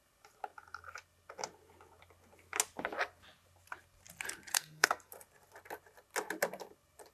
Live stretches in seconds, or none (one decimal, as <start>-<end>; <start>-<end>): 0.0-4.5; 5.1-7.1